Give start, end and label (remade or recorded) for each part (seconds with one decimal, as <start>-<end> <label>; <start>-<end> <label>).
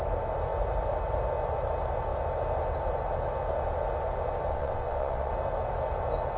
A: 0.0-4.5 recorded; 4.5-5.3 remade; 5.3-6.4 recorded